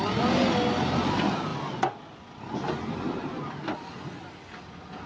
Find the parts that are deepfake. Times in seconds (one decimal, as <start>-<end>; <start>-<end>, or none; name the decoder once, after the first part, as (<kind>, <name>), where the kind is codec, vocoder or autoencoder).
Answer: none